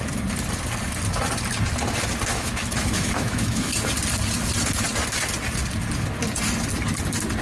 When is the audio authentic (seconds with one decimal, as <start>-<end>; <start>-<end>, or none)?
0.0-2.3; 3.7-7.4